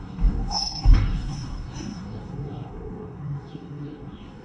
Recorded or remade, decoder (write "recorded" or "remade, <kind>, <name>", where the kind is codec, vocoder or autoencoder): remade, codec, SNAC